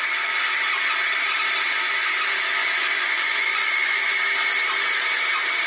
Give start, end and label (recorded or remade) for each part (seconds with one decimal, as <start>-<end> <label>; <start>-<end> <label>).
0.0-2.6 recorded; 2.6-4.1 remade; 4.1-5.7 recorded